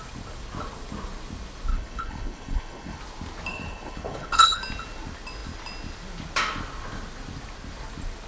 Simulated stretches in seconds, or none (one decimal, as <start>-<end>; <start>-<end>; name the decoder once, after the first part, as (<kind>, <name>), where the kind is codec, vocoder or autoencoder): 1.7-3.0 (codec, HILCodec); 3.5-4.6